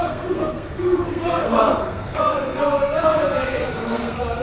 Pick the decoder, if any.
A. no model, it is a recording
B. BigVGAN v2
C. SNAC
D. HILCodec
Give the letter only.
C